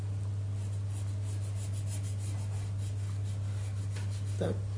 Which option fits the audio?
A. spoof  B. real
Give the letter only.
B